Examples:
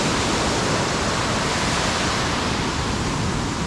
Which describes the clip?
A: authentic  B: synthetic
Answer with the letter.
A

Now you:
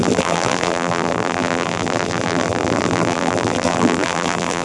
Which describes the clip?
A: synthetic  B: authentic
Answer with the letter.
A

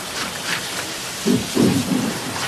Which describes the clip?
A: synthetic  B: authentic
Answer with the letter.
A